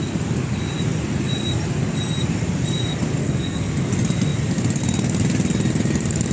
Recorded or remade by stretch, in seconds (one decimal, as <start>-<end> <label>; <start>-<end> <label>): 0.0-3.2 recorded; 3.2-3.7 remade; 3.7-6.3 recorded